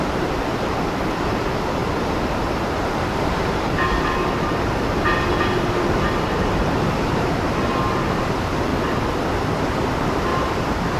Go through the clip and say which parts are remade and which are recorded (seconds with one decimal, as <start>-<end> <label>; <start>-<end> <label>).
0.0-8.7 remade; 8.7-9.5 recorded; 9.5-10.3 remade; 10.3-11.0 recorded